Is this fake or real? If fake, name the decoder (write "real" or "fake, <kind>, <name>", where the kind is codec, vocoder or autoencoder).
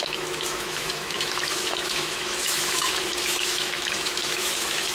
fake, autoencoder, DAC-VAE